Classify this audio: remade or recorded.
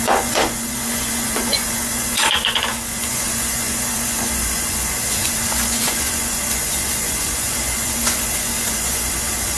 remade